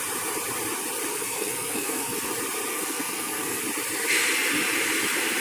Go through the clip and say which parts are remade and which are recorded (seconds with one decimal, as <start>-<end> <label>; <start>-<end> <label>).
0.0-1.1 recorded; 1.1-2.3 remade; 2.3-2.7 recorded; 2.7-3.6 remade; 3.6-5.4 recorded